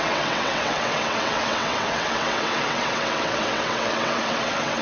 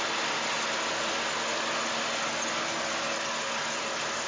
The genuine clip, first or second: second